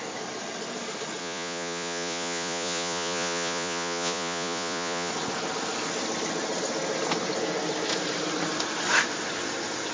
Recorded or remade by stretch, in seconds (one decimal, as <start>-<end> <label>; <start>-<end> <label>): 0.0-1.2 recorded; 1.2-5.1 remade; 5.1-9.9 recorded